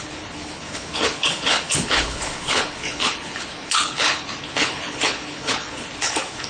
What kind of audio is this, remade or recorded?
remade